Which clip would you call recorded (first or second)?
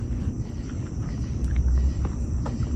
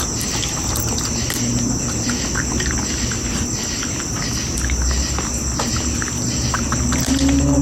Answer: second